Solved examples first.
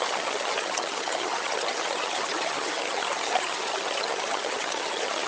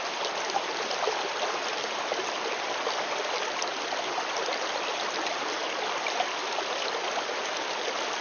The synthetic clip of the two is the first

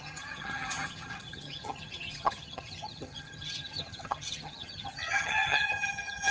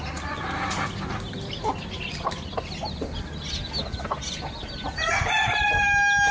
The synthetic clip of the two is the first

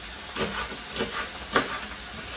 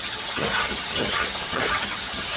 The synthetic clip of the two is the second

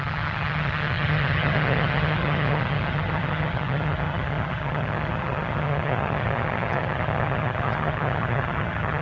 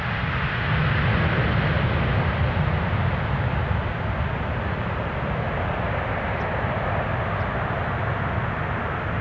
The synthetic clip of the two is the first